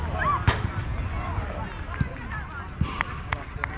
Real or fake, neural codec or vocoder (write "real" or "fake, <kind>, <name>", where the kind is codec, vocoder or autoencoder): real